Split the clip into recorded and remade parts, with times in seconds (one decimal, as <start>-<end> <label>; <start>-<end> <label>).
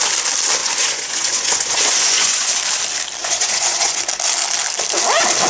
0.0-0.6 recorded; 0.6-2.5 remade; 2.5-3.2 recorded; 3.2-4.0 remade; 4.0-5.5 recorded